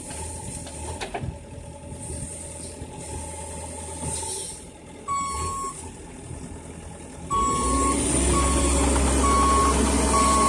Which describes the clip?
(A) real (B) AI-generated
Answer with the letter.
A